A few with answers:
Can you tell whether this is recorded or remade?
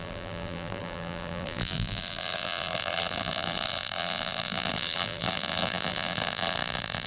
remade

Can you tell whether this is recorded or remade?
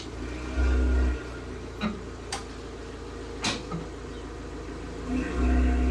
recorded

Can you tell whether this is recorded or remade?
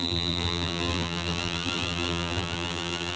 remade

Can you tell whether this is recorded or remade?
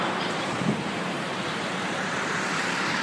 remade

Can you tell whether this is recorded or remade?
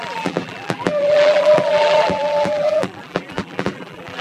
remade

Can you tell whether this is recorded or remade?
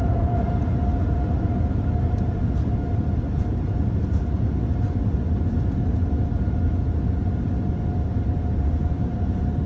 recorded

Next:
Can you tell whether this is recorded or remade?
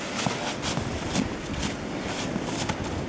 recorded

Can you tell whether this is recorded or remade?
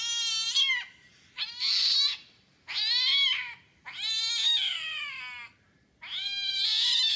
recorded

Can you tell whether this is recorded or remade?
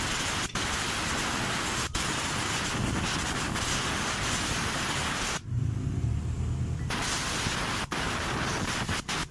recorded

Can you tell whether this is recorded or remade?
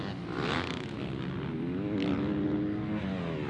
recorded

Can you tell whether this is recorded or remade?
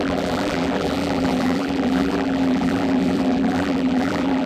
remade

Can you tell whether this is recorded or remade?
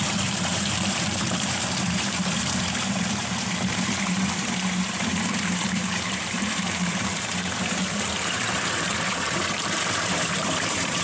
remade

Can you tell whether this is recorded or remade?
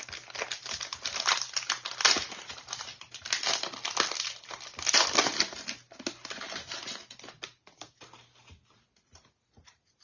recorded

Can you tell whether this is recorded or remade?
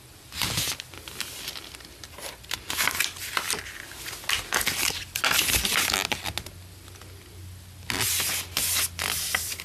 recorded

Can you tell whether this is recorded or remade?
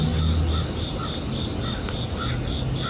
recorded